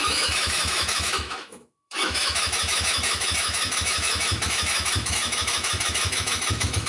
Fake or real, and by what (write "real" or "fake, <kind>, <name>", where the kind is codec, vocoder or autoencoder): fake, autoencoder, DAC-VAE